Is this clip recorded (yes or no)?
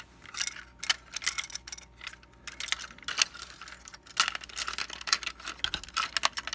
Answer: yes